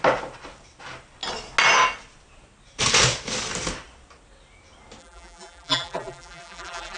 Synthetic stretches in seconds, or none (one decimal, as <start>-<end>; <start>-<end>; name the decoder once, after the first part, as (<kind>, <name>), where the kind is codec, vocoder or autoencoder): 5.0-7.0 (vocoder, BigVGAN v2)